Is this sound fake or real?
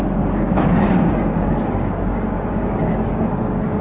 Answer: fake